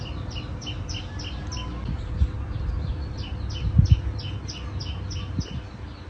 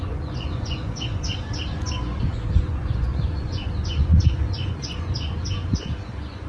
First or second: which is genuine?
first